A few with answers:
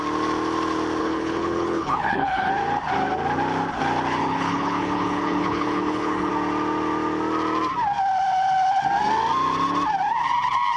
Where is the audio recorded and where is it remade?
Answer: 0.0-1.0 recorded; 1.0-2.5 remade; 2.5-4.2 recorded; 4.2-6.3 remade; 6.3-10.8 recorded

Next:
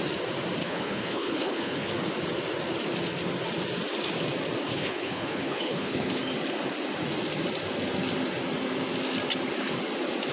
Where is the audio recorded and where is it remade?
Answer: 0.0-0.6 recorded; 0.6-1.9 remade; 1.9-4.7 recorded; 4.7-6.2 remade; 6.2-10.3 recorded